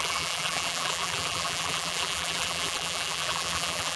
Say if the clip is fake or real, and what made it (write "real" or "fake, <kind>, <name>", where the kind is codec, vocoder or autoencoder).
fake, vocoder, BigVGAN v2